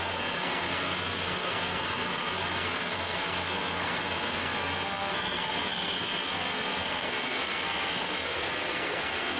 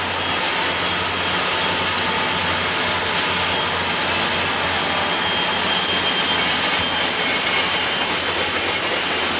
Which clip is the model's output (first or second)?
first